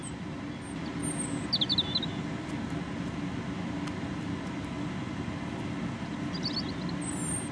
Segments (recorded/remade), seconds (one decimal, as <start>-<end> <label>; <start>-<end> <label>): 0.0-7.5 recorded